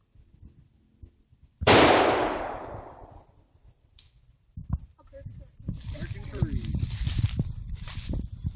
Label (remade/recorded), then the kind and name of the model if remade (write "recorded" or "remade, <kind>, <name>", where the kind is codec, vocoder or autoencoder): remade, vocoder, BigVGAN v2